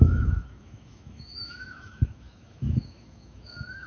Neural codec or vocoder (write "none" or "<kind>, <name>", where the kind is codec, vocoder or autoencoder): autoencoder, DAC-VAE